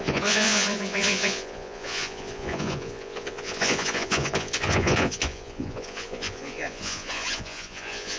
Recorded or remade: remade